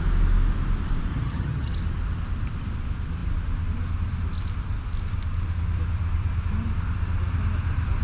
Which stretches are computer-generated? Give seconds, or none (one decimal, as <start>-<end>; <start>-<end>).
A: 1.1-1.7